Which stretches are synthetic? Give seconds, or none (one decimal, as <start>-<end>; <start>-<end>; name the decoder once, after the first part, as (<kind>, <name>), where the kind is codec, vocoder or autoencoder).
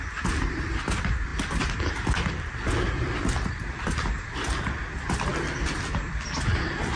none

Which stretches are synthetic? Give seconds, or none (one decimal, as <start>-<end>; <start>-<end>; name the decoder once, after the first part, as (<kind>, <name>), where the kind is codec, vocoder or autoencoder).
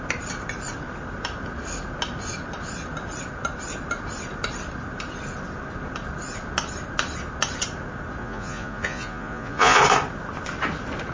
8.2-9.8 (vocoder, Vocos)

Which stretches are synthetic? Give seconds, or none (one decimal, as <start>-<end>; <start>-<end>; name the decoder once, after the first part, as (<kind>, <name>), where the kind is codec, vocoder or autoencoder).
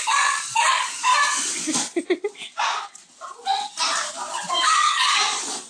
0.0-1.1 (codec, DAC); 4.5-5.7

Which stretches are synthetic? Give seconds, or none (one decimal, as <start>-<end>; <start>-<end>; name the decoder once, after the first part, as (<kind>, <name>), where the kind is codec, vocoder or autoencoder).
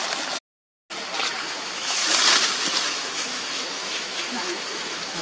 1.4-2.0 (autoencoder, DAC-VAE); 2.9-5.2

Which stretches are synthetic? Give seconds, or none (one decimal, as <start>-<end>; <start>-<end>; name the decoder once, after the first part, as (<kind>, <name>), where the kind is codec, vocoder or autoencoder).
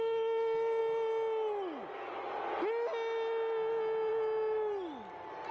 none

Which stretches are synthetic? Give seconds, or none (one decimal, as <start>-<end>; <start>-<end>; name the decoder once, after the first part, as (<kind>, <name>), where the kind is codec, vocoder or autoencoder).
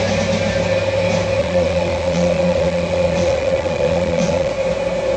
1.4-4.5 (vocoder, Vocos)